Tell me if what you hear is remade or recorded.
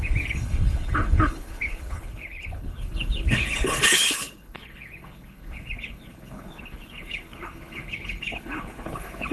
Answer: remade